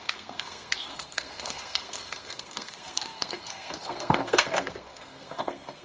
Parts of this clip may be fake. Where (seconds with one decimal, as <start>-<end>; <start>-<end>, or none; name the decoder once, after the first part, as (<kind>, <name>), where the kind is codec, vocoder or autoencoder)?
0.0-5.8 (codec, SNAC)